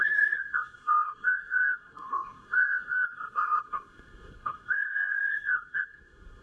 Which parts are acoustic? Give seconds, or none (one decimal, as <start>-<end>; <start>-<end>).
none